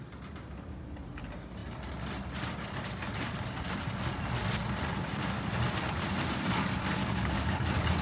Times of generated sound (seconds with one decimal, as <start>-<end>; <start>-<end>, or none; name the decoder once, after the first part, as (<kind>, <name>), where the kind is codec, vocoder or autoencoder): 7.0-8.0 (codec, DAC)